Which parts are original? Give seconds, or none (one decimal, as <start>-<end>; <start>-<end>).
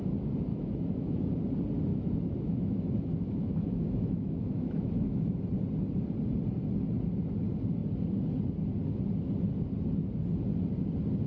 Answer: 0.0-0.5; 1.3-1.9; 5.4-11.3